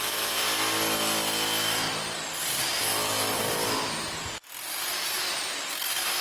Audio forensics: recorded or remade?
recorded